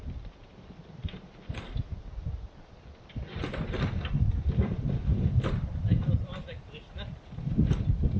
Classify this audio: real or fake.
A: fake